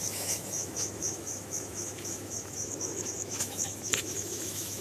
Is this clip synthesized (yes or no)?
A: yes